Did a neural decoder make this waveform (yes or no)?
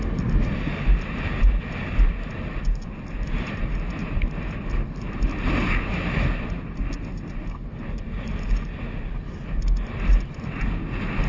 no